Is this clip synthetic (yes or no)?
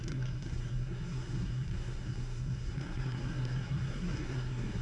yes